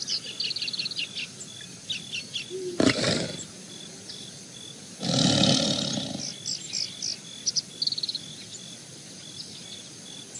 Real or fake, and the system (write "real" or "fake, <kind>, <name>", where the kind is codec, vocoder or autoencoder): real